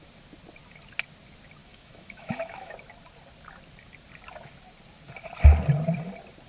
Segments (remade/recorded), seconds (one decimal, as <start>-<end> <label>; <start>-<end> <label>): 0.0-1.6 recorded; 1.6-2.7 remade; 2.7-6.5 recorded